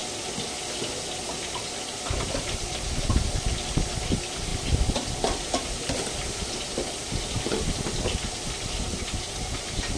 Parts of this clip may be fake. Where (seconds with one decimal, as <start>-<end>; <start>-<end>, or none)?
none